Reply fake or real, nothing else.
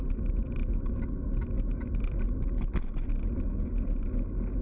real